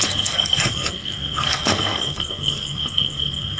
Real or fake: fake